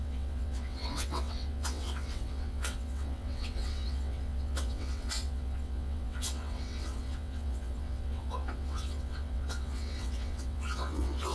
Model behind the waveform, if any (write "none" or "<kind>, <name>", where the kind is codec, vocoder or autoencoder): vocoder, WaveNeXt